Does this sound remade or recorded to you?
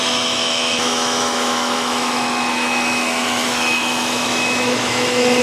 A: remade